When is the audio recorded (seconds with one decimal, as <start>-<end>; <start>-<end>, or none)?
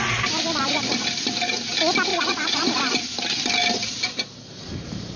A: 0.0-2.1; 2.8-5.2